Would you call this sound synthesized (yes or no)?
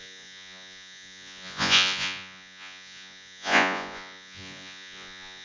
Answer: yes